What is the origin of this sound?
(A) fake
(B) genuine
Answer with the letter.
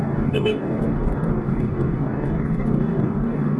A